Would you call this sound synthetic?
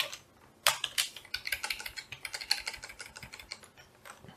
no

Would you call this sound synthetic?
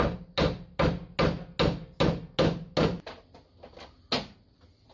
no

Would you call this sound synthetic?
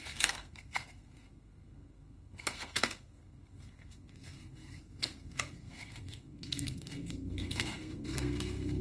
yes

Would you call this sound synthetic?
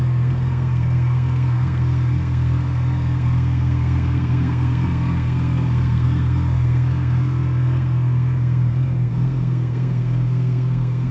yes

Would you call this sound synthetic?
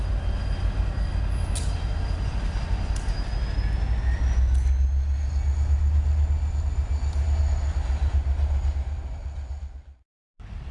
no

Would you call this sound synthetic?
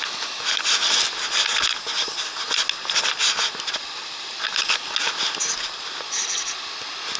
no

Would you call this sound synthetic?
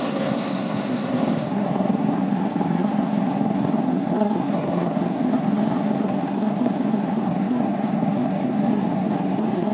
yes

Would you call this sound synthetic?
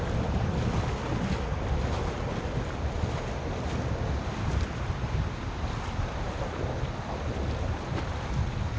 no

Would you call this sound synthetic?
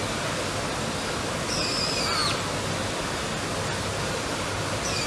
no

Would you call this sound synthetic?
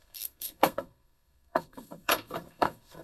yes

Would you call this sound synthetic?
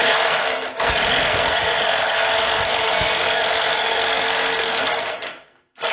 yes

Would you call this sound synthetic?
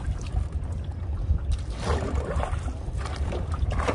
no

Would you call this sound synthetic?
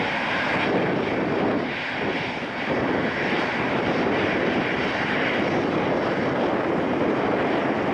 no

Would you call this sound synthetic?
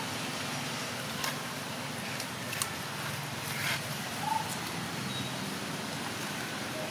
no